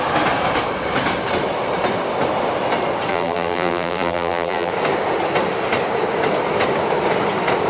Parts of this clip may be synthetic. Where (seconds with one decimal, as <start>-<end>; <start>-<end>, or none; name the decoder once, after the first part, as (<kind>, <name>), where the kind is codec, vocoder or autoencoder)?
3.1-4.7 (vocoder, BigVGAN v2)